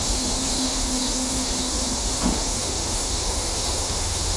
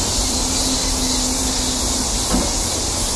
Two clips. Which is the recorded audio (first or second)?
second